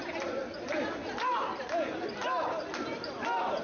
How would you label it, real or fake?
real